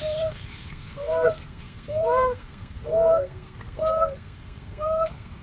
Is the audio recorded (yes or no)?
no